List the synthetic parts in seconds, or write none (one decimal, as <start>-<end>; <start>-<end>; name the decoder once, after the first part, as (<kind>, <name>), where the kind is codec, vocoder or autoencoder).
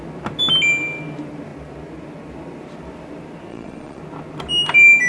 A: 3.5-4.0 (vocoder, Vocos)